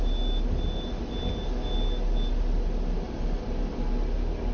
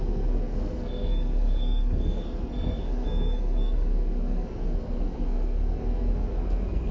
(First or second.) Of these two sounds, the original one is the first